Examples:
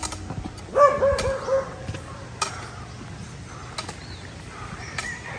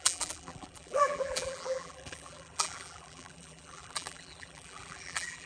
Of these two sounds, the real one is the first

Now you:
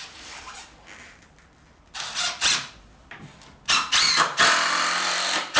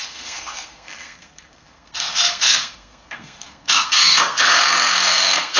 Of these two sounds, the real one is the first